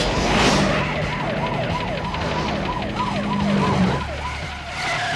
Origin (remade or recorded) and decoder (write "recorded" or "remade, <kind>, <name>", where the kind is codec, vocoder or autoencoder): recorded